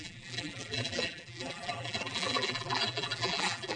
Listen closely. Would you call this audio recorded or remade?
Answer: remade